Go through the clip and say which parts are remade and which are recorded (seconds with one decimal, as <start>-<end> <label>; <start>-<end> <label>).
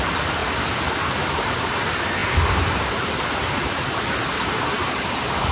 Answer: 0.0-5.5 recorded